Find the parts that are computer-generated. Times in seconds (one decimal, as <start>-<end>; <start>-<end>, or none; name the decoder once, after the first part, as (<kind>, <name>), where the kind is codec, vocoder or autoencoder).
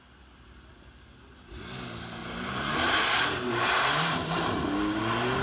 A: 2.2-5.0 (vocoder, BigVGAN v2)